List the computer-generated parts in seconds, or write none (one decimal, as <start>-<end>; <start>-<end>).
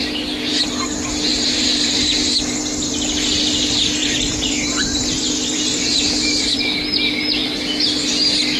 1.3-2.0; 4.0-6.6